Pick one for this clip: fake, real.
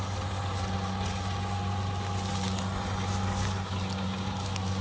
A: real